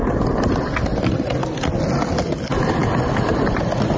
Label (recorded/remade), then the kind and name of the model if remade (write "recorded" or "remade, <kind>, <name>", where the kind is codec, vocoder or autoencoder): recorded